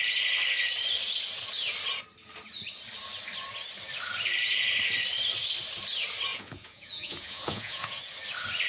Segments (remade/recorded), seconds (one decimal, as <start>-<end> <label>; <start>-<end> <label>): 0.0-6.3 recorded; 6.3-8.1 remade; 8.1-8.7 recorded